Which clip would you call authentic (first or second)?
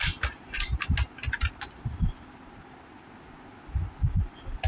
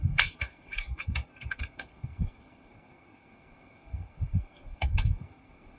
first